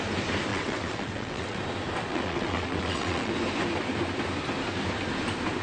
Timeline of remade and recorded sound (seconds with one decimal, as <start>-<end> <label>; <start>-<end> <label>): 0.0-0.5 recorded; 0.5-1.6 remade; 1.6-2.1 recorded; 2.1-3.3 remade; 3.3-5.6 recorded